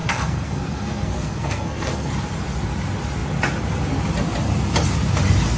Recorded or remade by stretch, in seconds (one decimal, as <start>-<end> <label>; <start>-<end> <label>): 0.0-2.1 remade; 2.1-5.6 recorded